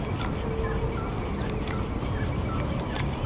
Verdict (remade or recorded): recorded